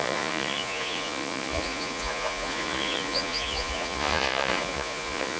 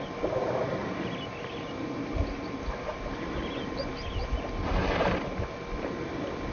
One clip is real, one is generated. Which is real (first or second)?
second